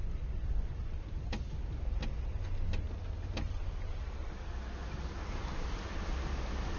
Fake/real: real